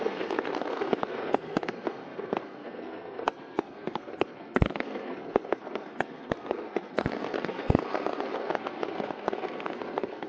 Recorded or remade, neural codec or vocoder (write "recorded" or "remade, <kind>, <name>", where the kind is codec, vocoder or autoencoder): remade, codec, SNAC